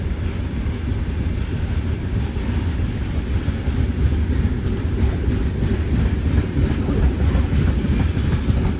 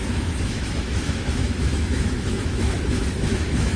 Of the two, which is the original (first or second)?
first